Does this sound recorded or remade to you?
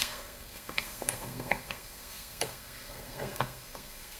remade